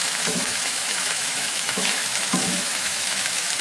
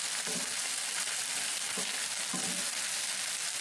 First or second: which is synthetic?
first